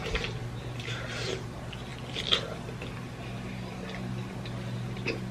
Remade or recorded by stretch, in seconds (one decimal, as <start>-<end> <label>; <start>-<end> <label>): 0.0-5.3 recorded